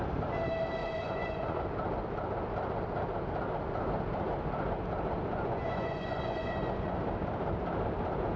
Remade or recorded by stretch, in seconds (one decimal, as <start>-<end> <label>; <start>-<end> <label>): 0.0-0.8 recorded; 0.8-1.6 remade; 1.6-5.3 recorded; 5.3-7.0 remade; 7.0-8.4 recorded